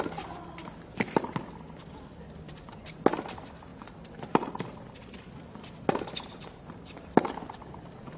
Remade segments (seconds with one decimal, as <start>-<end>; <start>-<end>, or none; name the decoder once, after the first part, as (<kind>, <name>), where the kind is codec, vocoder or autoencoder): 0.6-1.4 (vocoder, BigVGAN v2); 3.7-4.6